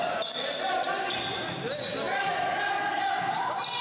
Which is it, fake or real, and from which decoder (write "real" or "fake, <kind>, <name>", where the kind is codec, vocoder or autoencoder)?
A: real